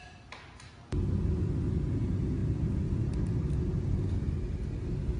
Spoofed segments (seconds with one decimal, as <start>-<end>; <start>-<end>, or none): none